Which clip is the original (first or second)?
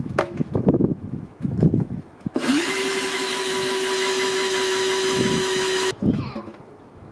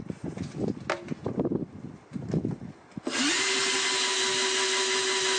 second